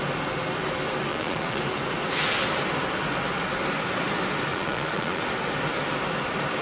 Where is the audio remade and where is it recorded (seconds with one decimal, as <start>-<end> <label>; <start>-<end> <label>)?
0.0-1.1 recorded; 1.1-1.6 remade; 1.6-4.5 recorded; 4.5-5.2 remade; 5.2-6.6 recorded